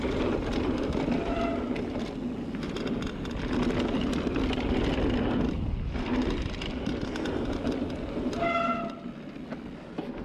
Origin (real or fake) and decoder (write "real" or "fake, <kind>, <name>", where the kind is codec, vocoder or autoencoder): real